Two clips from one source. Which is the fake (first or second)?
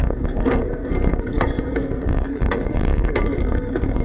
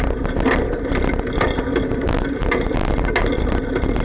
first